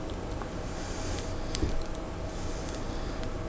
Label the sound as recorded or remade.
recorded